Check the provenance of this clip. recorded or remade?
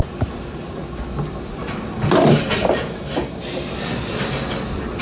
recorded